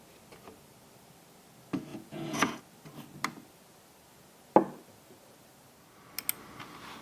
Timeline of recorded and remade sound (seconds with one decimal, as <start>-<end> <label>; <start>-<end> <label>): 0.0-1.9 recorded; 1.9-2.6 remade; 2.6-7.0 recorded

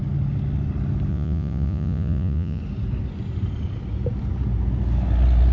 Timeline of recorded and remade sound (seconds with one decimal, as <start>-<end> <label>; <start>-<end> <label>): 0.0-1.1 recorded; 1.1-2.6 remade; 2.6-5.5 recorded